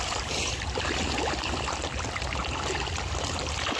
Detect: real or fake real